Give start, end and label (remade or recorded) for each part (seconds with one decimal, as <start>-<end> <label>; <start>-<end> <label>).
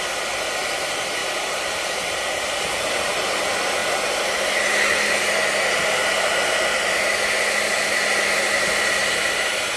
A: 0.0-1.2 recorded; 1.2-2.8 remade; 2.8-9.8 recorded